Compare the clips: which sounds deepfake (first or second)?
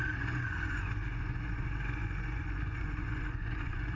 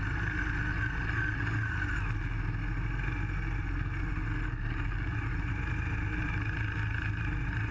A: first